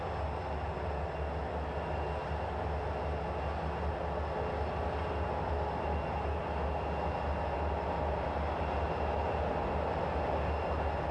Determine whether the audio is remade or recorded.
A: recorded